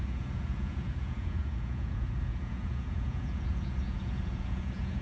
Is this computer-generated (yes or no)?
yes